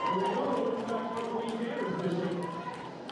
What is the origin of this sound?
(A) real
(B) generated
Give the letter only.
B